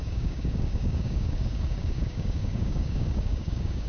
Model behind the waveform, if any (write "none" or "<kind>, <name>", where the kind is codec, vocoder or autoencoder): codec, DAC